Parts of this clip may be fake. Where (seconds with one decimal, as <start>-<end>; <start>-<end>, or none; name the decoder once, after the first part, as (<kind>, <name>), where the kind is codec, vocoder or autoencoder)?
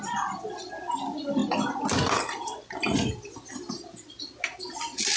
none